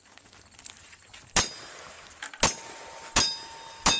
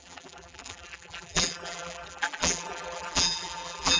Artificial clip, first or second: second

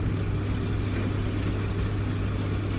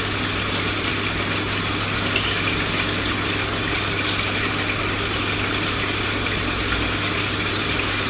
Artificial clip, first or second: second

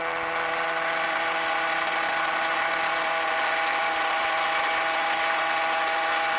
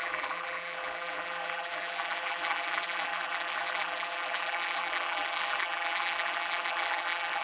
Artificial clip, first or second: second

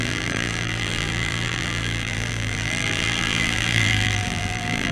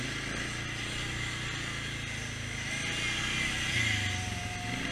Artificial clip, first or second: first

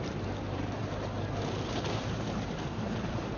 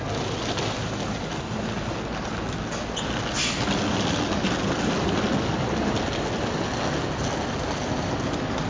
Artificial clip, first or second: first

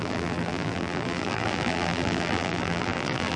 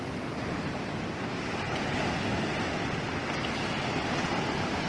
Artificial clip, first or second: first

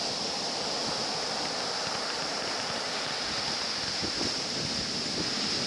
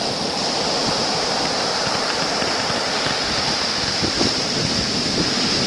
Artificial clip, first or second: second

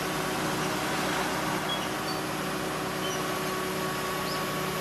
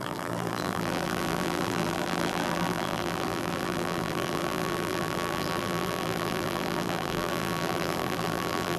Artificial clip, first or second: second